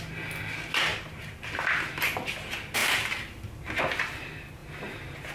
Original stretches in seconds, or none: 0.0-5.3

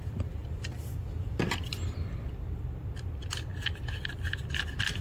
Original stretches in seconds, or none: 0.0-0.4; 1.4-5.0

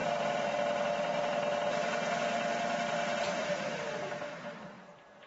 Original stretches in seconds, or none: 0.6-5.3